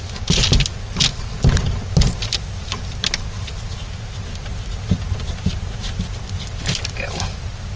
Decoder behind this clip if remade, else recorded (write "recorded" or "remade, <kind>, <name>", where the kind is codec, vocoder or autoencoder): recorded